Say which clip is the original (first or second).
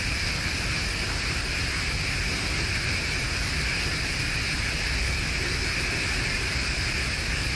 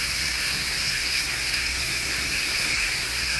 first